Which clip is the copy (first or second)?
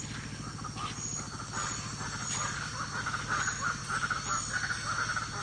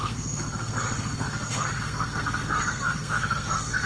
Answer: second